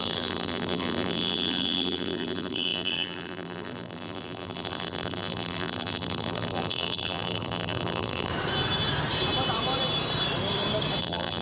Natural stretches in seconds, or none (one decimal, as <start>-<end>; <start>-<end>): 8.3-11.0